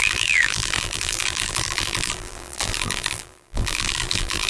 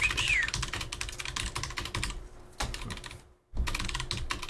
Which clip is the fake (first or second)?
first